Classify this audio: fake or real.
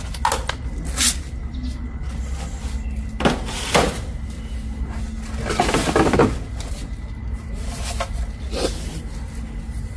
real